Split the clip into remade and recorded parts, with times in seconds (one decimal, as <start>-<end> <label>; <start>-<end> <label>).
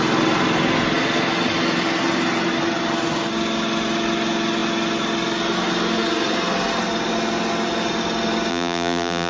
0.0-8.5 recorded; 8.5-9.3 remade